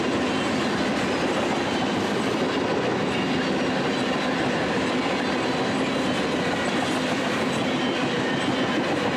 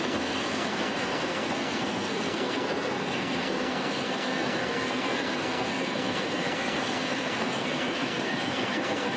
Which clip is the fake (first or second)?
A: second